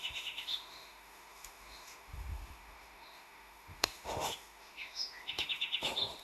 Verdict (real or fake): fake